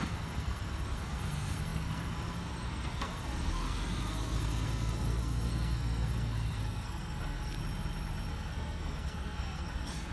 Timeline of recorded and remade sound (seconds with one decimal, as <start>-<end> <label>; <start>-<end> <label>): 0.0-7.6 remade; 7.6-8.3 recorded; 8.3-10.1 remade